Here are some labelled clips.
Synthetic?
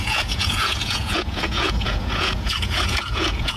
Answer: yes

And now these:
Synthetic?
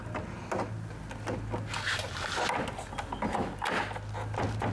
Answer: no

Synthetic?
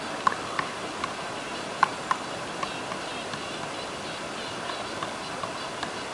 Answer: no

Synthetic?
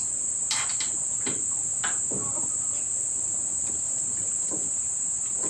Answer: no